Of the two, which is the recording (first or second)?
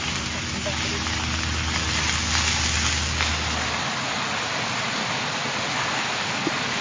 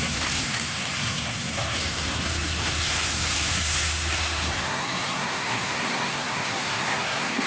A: first